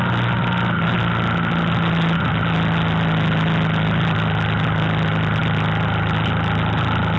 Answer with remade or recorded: recorded